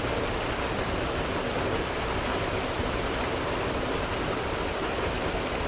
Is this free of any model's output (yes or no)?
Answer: no